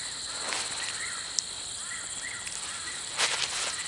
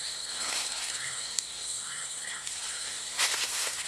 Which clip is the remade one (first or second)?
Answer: second